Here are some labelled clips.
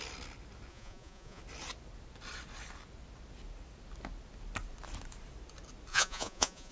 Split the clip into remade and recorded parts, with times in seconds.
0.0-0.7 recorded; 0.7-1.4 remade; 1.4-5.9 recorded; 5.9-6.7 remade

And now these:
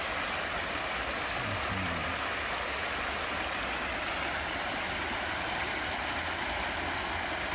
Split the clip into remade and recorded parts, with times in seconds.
0.0-7.5 recorded

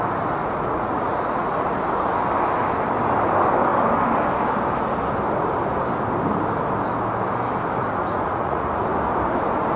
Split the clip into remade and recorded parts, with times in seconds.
0.0-0.4 recorded; 0.4-1.8 remade; 1.8-7.8 recorded; 7.8-9.0 remade; 9.0-9.8 recorded

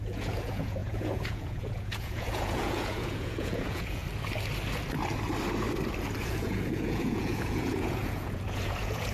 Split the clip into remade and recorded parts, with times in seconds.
0.0-4.0 remade; 4.0-6.2 recorded; 6.2-9.1 remade